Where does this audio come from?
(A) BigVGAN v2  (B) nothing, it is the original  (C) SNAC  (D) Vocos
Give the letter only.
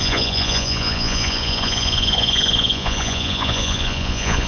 D